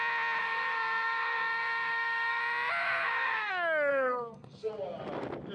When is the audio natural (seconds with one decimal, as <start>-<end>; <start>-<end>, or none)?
0.0-0.4; 2.4-2.8; 3.5-3.9; 4.7-5.5